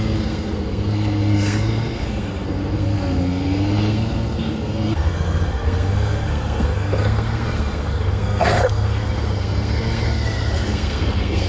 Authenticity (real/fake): fake